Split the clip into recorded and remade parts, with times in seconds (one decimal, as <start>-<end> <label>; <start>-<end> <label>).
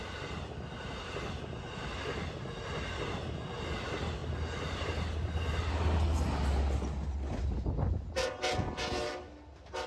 0.0-9.9 recorded